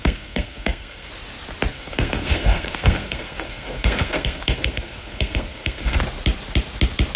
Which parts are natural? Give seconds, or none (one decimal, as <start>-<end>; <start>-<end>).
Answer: 1.1-1.7; 6.0-7.2